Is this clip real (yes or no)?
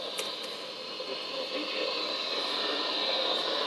yes